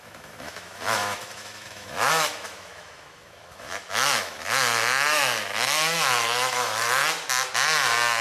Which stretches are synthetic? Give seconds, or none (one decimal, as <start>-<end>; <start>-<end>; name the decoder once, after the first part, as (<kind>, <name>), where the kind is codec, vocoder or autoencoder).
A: 0.0-7.0 (autoencoder, DAC-VAE)